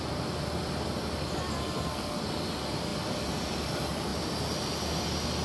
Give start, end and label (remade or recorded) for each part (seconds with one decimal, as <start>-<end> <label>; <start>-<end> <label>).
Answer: 0.0-1.6 recorded; 1.6-2.2 remade; 2.2-5.4 recorded